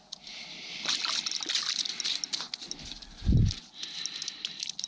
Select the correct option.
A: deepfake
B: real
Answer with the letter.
B